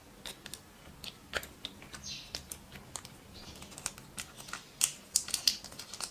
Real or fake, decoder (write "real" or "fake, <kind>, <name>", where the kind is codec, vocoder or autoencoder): real